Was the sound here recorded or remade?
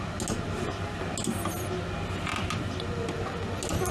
recorded